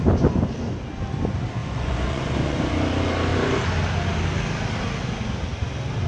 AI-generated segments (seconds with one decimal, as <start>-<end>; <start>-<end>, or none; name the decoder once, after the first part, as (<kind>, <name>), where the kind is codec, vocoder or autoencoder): 1.6-2.6 (vocoder, Vocos)